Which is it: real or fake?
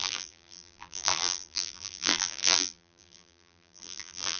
fake